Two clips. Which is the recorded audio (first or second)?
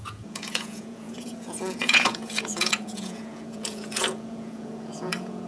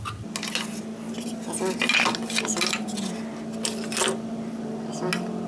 second